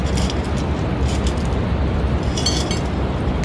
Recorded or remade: recorded